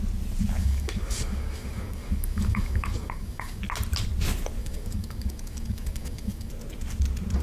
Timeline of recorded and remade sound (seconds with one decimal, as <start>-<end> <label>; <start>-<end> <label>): 0.0-0.6 recorded; 0.6-3.6 remade; 3.6-4.6 recorded; 4.6-6.5 remade; 6.5-7.4 recorded